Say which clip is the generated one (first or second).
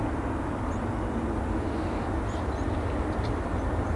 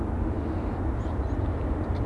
second